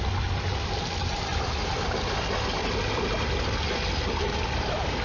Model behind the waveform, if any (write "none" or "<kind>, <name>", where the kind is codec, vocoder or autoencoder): none